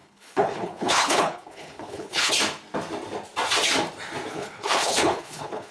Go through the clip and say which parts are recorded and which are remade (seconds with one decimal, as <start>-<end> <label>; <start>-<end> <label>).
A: 0.0-2.3 remade; 2.3-4.3 recorded; 4.3-5.7 remade